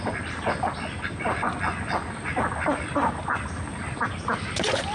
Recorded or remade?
recorded